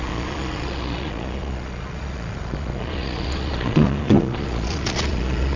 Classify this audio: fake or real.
fake